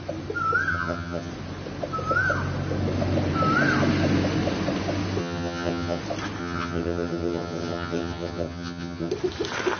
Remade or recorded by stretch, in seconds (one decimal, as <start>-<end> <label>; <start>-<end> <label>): 0.0-0.7 recorded; 0.7-1.3 remade; 1.3-5.2 recorded; 5.2-6.0 remade; 6.0-6.4 recorded; 6.4-9.1 remade; 9.1-9.8 recorded